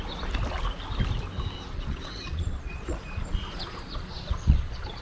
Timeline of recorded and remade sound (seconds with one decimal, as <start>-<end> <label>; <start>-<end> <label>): 0.0-1.7 recorded; 1.7-5.0 remade